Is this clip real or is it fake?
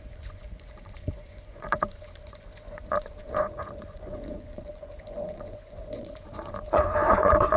fake